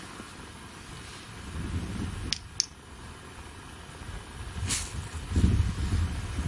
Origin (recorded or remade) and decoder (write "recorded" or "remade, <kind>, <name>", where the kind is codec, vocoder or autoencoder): recorded